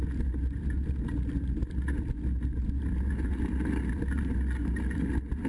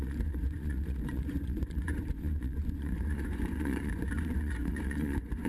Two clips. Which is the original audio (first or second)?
first